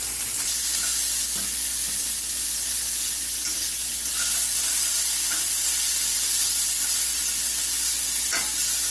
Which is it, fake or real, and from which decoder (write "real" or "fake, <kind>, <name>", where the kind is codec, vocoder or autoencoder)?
real